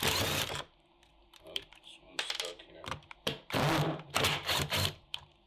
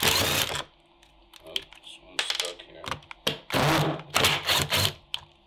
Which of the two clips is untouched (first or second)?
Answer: second